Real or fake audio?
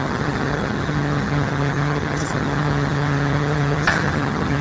fake